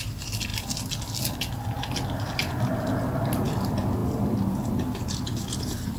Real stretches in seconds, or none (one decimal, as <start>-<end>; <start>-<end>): 0.0-6.0